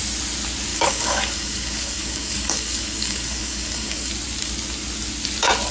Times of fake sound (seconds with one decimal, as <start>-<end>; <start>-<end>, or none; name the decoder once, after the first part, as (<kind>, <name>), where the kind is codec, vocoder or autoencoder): 0.7-4.1 (codec, DAC)